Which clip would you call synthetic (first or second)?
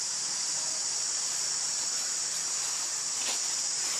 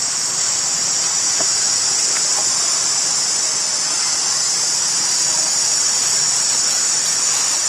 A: first